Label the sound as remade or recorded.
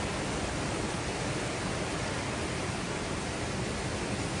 recorded